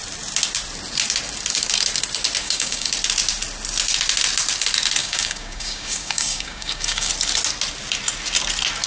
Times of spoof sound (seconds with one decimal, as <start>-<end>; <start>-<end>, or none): 2.4-2.9; 5.0-7.1